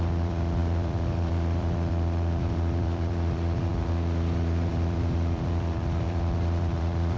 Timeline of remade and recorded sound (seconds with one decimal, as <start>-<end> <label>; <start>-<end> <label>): 0.0-7.2 remade